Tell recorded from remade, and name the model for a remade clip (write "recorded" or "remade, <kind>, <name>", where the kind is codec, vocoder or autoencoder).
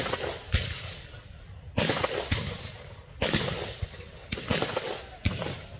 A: recorded